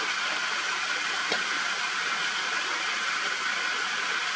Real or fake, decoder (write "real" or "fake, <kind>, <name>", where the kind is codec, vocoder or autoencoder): real